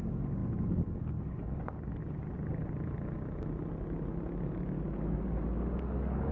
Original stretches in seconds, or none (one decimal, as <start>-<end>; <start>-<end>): 2.0-5.8